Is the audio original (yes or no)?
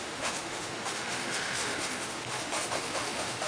no